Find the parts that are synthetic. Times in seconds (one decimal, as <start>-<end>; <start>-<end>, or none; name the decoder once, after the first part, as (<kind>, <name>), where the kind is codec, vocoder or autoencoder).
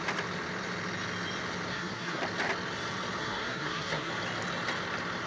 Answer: 1.7-2.2 (codec, SNAC); 3.2-4.1